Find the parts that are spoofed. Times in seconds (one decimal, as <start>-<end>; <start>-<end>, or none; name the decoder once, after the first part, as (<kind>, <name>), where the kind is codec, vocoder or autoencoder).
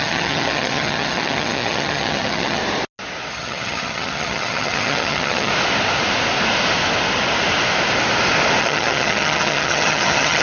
0.0-2.6 (vocoder, HiFi-GAN); 3.3-5.5; 8.6-10.4